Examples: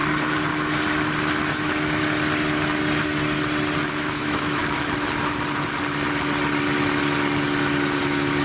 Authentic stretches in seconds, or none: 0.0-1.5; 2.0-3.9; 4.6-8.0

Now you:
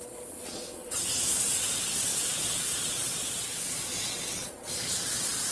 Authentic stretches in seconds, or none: none

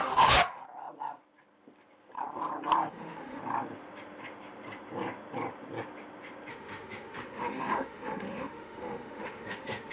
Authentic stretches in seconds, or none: 0.6-2.9; 3.4-6.5

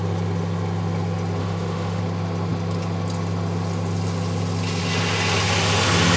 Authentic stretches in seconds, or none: 0.0-1.4; 2.0-6.2

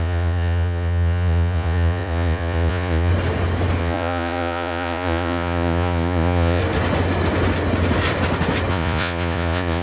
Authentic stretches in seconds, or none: 3.1-3.8; 6.6-8.7

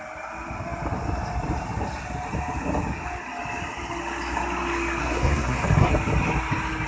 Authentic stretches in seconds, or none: 0.0-5.0; 5.9-6.9

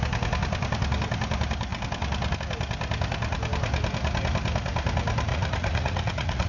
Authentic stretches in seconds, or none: 0.0-5.3

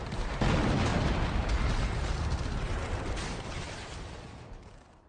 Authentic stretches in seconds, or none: 0.0-0.9; 4.0-5.1